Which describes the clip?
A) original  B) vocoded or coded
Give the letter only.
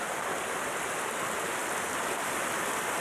B